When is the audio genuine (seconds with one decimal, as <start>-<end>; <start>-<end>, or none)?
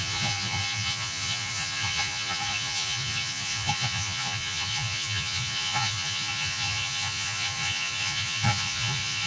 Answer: none